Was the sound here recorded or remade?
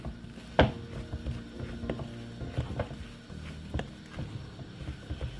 recorded